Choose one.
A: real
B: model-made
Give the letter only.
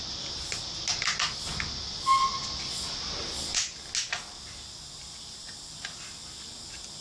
A